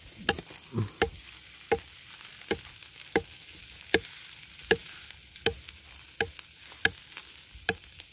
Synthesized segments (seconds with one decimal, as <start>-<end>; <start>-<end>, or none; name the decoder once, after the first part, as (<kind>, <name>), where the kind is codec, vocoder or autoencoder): none

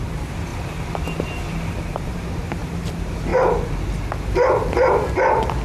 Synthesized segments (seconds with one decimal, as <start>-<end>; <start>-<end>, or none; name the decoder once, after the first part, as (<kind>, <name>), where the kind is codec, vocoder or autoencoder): none

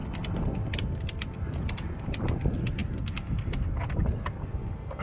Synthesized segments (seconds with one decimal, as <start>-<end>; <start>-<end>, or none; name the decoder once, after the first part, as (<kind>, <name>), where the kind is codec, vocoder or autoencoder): none